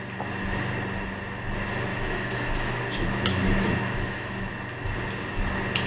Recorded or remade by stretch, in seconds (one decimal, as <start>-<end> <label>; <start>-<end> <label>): 0.0-1.9 recorded; 1.9-4.5 remade; 4.5-5.9 recorded